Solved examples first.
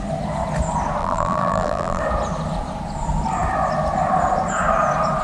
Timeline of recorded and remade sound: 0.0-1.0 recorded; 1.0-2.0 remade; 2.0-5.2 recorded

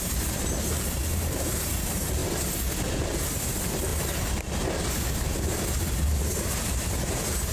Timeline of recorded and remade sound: 0.0-2.2 remade; 2.2-3.3 recorded; 3.3-3.9 remade; 3.9-4.9 recorded; 4.9-7.5 remade